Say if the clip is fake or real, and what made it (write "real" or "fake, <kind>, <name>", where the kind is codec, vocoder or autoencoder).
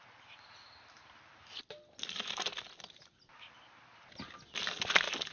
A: real